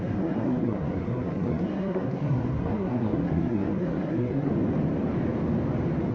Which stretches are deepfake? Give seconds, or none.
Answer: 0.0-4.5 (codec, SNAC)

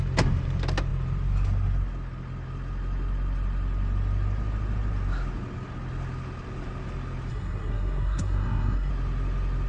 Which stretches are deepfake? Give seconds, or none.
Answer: 7.3-8.9 (codec, SNAC)